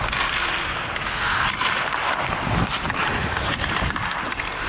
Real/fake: real